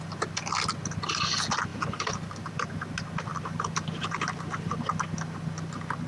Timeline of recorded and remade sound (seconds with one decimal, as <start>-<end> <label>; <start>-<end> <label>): 0.0-1.7 recorded; 1.7-2.5 remade; 2.5-3.3 recorded; 3.3-4.7 remade; 4.7-6.1 recorded